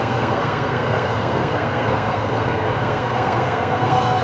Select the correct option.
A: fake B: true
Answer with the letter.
A